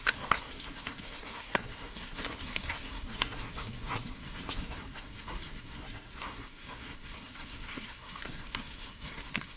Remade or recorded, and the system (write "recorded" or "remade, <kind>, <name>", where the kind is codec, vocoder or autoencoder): remade, codec, SNAC